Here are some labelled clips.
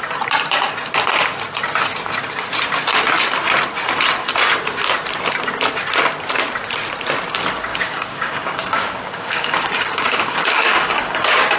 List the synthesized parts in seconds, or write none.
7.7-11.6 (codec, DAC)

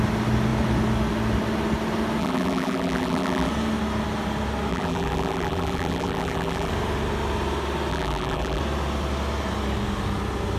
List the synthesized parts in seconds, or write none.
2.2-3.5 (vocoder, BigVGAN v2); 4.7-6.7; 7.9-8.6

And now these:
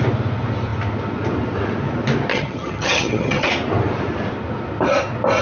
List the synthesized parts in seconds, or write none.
2.3-3.5 (vocoder, HiFi-GAN)

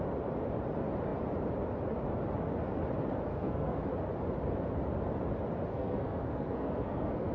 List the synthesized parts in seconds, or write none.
3.3-3.8 (codec, SNAC); 5.7-7.3

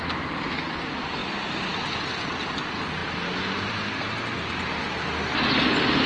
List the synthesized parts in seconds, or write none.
none

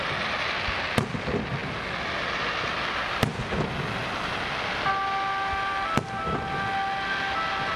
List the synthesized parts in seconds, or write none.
none

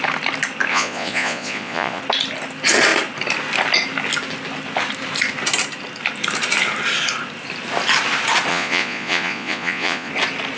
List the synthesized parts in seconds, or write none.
0.7-2.0 (vocoder, Vocos); 8.5-10.1